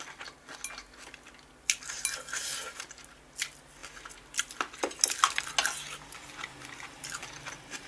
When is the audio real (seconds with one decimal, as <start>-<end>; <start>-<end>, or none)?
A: 0.0-7.9